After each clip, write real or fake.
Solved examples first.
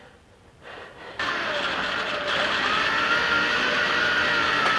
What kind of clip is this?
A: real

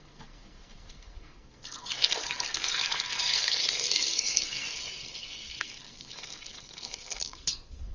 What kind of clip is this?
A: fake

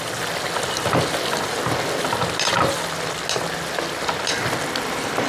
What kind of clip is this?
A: real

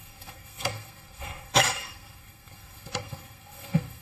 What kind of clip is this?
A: fake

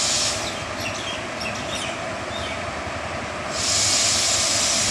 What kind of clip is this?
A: real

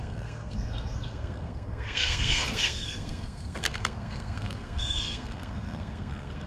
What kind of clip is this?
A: fake